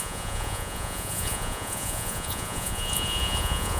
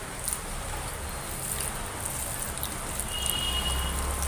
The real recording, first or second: second